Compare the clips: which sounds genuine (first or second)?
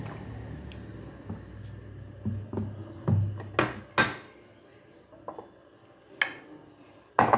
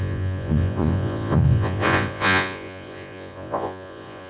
first